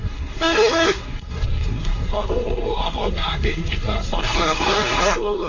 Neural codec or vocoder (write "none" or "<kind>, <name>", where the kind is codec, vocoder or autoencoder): codec, SNAC